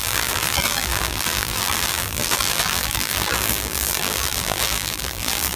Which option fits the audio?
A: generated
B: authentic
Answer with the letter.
A